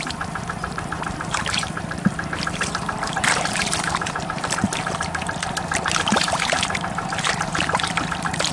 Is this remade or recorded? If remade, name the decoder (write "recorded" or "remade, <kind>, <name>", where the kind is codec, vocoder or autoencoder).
remade, vocoder, BigVGAN v2